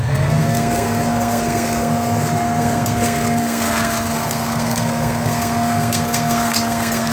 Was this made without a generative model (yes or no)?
no